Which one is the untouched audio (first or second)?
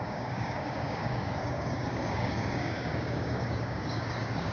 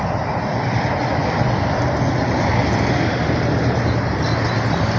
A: second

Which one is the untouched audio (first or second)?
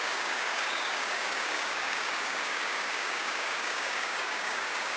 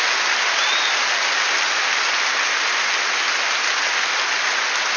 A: second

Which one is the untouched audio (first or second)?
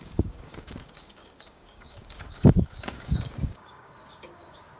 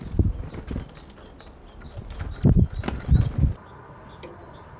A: second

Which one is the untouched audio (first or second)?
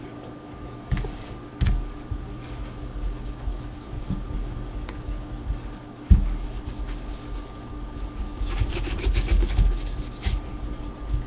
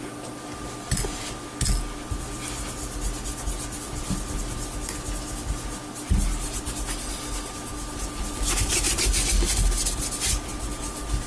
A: second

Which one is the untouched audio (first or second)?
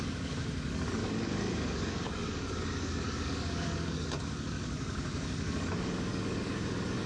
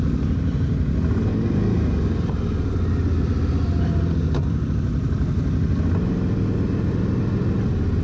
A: second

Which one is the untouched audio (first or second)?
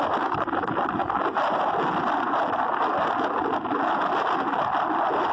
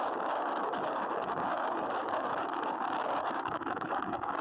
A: first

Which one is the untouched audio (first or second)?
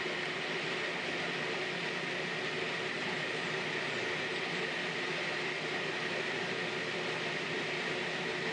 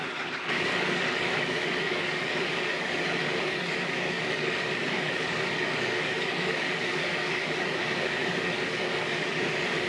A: first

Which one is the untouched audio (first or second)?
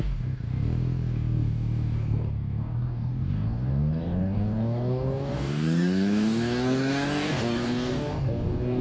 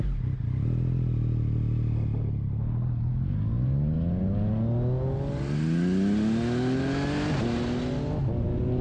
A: second